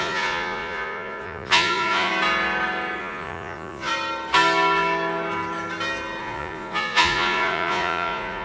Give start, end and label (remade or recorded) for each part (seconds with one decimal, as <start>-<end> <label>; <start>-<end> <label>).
0.0-2.1 remade; 2.1-3.0 recorded; 3.0-3.9 remade; 3.9-6.2 recorded; 6.2-8.4 remade